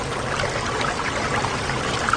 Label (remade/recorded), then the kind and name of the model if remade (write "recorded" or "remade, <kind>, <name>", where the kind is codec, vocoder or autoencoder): recorded